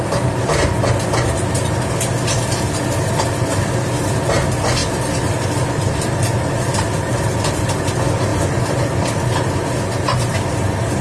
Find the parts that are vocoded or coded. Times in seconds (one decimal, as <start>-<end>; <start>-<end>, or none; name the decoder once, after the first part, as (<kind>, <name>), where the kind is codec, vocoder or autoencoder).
4.8-7.8 (vocoder, BigVGAN v2)